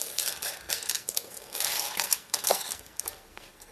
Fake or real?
fake